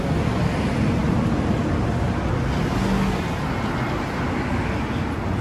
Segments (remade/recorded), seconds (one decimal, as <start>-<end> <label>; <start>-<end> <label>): 0.0-5.4 recorded